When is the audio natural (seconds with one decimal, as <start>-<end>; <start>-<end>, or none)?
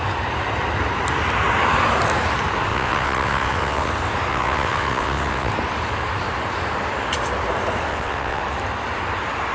0.0-2.7; 3.9-4.3; 5.5-7.9; 8.4-9.5